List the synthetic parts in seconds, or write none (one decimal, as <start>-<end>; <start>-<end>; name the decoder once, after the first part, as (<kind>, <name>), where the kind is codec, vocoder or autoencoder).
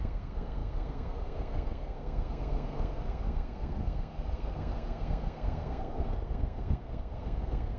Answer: 0.0-7.8 (codec, SNAC)